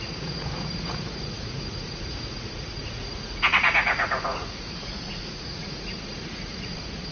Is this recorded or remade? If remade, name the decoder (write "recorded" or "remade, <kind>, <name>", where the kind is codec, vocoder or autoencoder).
remade, vocoder, Vocos